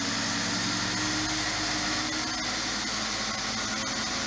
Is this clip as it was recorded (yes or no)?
yes